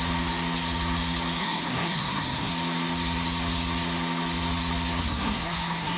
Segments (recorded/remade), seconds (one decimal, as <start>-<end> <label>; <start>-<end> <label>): 0.0-1.4 recorded; 1.4-2.5 remade; 2.5-5.0 recorded; 5.0-6.0 remade

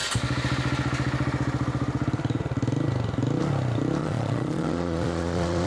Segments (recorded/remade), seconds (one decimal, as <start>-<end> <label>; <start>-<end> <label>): 0.0-4.0 recorded; 4.0-5.7 remade

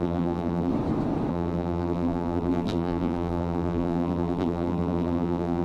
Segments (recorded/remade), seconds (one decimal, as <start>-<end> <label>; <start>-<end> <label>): 0.0-0.7 remade; 0.7-1.3 recorded; 1.3-5.6 remade

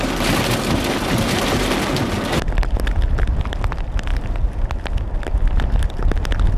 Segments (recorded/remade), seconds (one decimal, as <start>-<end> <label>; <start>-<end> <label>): 0.0-6.6 recorded